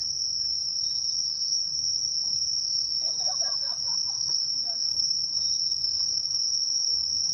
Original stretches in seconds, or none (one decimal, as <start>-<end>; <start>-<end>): 0.0-0.6; 2.1-3.4

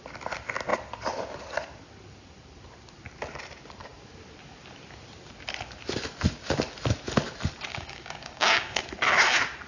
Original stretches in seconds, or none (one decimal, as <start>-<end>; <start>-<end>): 0.0-7.7; 8.8-9.7

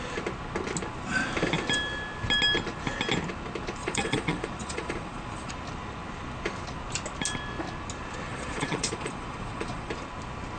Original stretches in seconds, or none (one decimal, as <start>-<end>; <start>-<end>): 0.0-3.8; 5.5-8.3; 9.9-10.6